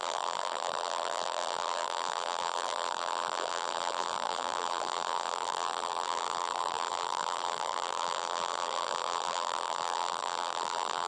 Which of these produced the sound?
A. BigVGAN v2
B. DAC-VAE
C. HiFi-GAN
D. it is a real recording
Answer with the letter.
A